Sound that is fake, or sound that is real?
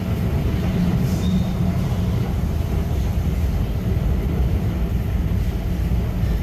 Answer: real